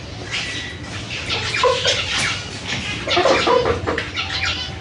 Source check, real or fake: real